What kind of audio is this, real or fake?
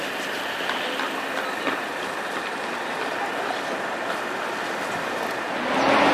real